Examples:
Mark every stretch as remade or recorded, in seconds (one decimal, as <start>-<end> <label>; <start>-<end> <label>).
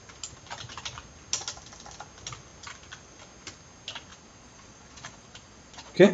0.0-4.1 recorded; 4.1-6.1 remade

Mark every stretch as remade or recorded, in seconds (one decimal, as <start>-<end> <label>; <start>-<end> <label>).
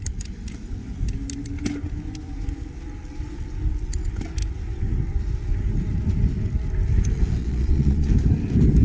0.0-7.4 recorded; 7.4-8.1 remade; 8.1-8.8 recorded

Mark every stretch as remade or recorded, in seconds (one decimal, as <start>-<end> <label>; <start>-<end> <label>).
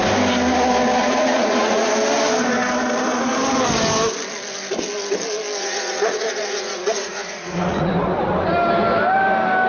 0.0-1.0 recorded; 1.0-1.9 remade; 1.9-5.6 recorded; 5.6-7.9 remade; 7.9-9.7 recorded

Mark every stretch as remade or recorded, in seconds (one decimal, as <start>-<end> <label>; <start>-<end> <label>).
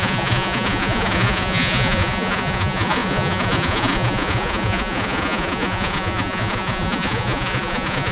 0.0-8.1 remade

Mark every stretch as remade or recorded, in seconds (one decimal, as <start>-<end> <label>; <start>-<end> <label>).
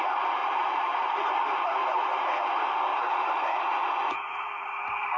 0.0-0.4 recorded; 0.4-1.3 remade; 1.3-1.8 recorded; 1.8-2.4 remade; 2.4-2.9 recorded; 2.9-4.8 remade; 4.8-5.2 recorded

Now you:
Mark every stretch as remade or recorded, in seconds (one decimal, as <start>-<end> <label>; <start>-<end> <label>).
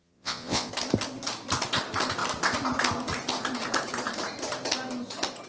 0.0-0.7 remade; 0.7-5.5 recorded